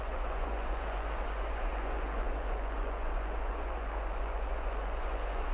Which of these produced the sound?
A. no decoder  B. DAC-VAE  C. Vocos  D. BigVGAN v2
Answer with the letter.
C